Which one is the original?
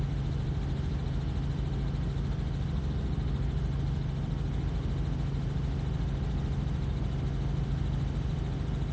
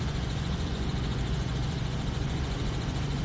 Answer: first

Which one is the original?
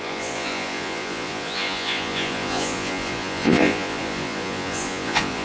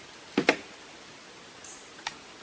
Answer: second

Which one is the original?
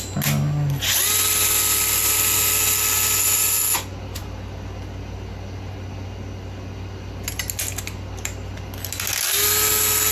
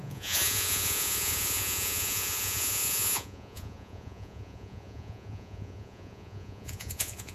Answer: first